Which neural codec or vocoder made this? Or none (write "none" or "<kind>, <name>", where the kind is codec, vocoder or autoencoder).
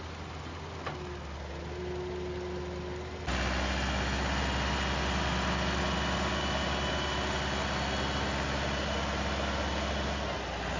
none